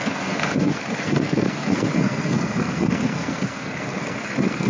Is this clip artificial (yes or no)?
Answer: yes